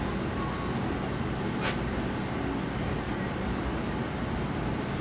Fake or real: real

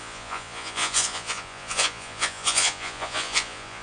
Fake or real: fake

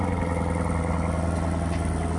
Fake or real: real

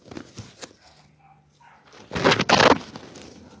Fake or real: real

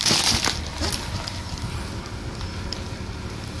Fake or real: real